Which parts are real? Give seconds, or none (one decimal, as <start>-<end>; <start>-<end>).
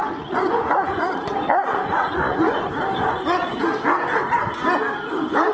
2.7-5.5